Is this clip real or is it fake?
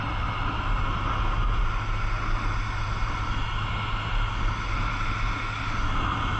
real